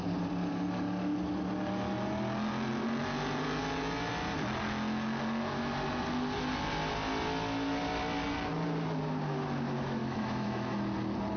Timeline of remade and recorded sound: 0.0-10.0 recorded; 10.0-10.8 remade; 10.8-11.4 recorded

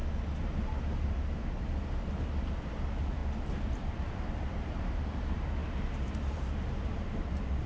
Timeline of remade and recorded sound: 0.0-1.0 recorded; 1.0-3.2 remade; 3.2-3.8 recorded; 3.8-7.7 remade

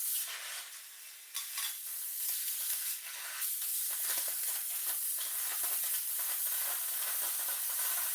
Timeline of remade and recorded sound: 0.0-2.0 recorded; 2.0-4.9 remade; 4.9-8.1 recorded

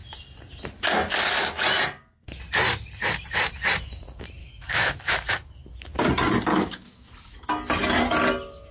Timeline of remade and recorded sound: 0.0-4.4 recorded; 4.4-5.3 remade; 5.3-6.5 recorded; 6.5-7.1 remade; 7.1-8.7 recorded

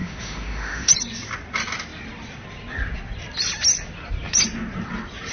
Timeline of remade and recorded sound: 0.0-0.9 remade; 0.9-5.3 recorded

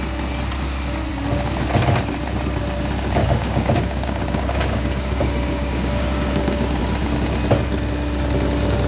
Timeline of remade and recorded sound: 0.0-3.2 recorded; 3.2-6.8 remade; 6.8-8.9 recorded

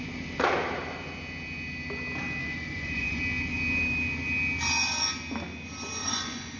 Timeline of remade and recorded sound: 0.0-2.4 recorded; 2.4-3.2 remade; 3.2-6.0 recorded; 6.0-6.6 remade

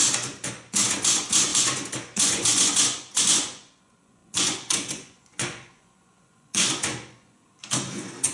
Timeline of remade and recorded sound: 0.0-8.3 remade